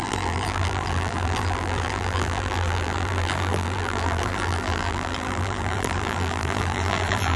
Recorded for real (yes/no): no